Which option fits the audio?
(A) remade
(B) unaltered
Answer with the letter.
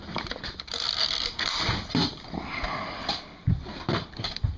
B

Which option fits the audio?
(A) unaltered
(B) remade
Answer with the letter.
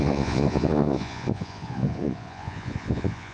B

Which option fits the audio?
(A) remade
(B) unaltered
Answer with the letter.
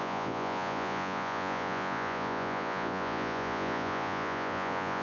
A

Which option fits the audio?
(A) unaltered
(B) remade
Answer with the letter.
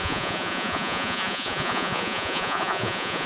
B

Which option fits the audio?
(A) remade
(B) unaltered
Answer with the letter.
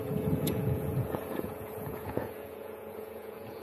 A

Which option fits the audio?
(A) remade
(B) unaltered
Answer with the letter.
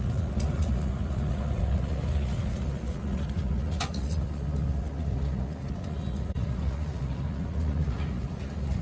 A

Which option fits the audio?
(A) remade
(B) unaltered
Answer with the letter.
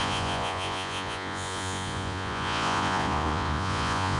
A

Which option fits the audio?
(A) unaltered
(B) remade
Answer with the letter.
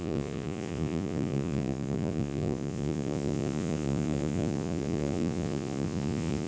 B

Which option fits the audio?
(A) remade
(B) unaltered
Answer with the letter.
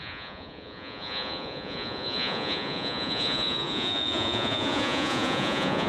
A